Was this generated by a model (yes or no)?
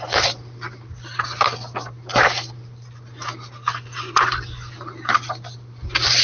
no